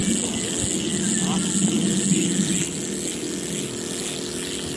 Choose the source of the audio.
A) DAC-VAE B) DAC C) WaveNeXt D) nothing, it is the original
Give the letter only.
D